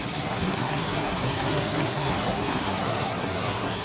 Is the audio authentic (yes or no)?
no